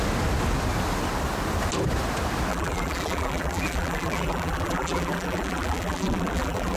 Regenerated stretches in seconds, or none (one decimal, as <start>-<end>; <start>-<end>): 2.5-6.8